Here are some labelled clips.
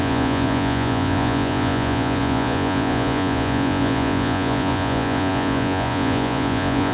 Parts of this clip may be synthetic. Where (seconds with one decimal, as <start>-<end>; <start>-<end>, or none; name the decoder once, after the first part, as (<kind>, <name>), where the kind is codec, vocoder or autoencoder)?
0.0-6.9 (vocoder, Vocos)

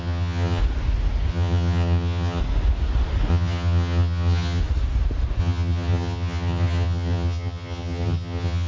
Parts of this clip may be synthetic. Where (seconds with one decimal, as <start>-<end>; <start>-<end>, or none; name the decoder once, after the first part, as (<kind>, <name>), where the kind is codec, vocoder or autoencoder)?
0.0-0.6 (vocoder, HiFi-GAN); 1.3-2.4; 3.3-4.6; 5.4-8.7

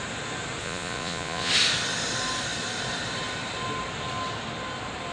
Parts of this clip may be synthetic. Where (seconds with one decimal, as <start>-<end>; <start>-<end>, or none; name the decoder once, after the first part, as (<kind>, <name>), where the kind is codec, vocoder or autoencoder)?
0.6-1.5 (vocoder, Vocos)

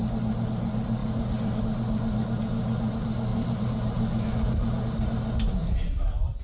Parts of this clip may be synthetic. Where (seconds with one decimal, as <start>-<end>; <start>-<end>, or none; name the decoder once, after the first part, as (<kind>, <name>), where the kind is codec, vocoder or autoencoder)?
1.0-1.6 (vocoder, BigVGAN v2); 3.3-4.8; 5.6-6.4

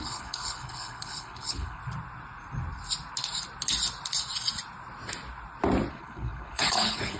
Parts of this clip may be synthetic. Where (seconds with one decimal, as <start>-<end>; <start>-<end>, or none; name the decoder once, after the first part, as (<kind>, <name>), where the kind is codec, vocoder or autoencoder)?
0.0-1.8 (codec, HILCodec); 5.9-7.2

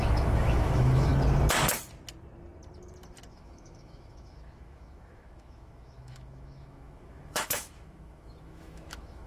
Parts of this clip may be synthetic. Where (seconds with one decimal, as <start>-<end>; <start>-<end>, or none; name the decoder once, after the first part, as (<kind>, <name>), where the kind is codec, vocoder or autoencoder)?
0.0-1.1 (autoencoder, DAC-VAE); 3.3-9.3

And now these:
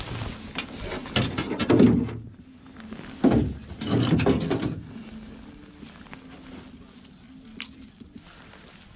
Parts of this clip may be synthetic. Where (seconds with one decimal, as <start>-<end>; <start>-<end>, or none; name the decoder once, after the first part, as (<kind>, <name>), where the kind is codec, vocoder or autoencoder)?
none